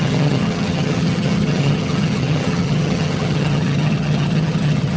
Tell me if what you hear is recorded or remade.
remade